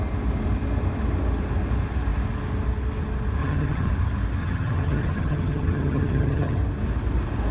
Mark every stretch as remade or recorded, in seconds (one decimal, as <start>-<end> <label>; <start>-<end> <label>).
0.0-3.4 recorded; 3.4-3.9 remade; 3.9-4.4 recorded; 4.4-6.6 remade; 6.6-7.5 recorded